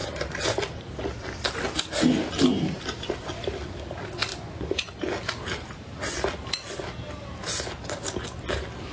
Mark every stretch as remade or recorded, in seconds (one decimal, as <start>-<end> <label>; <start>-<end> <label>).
0.0-4.3 recorded; 4.3-4.8 remade; 4.8-8.9 recorded